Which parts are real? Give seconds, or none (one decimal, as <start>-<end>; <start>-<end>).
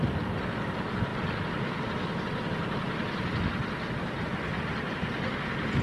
0.0-5.8